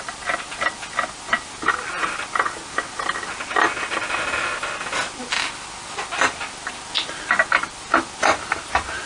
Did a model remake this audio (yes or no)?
no